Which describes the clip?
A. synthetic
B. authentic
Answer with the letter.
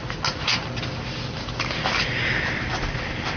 B